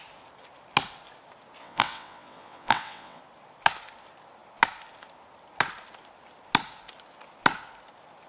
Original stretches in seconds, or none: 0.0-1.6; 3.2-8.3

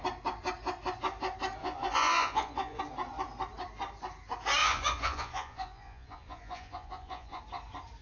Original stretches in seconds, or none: 0.0-1.6; 2.8-4.6; 7.4-8.0